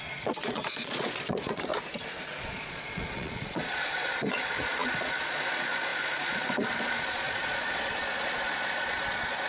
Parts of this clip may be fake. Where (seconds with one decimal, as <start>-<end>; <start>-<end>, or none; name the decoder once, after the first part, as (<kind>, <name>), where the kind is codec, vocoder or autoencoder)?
0.0-1.7 (vocoder, Vocos); 2.4-9.5